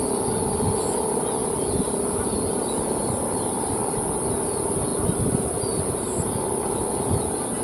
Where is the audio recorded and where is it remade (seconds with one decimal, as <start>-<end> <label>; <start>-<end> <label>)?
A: 0.0-3.0 recorded; 3.0-3.7 remade; 3.7-4.9 recorded; 4.9-6.9 remade; 6.9-7.6 recorded